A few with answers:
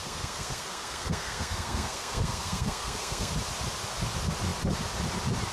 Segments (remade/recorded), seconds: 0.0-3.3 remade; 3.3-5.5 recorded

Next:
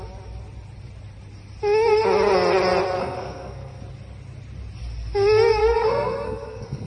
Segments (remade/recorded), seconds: 0.0-3.0 recorded; 3.0-3.8 remade; 3.8-5.6 recorded; 5.6-6.9 remade

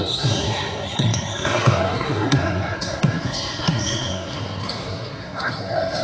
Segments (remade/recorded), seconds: 0.0-6.0 remade

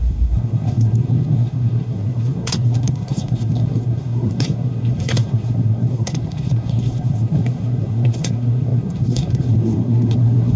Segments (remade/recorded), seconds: 0.0-10.6 remade

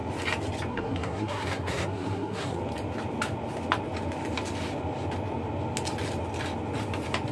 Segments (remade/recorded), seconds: 0.0-0.7 recorded; 0.7-2.6 remade; 2.6-7.3 recorded

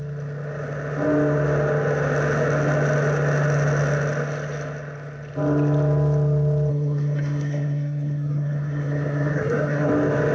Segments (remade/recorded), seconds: 0.0-6.7 recorded; 6.7-9.9 remade; 9.9-10.3 recorded

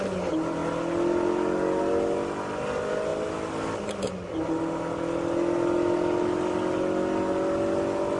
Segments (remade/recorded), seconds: 0.0-8.2 recorded